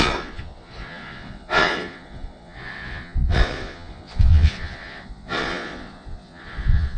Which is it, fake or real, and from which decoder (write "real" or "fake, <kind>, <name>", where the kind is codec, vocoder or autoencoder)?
fake, vocoder, Vocos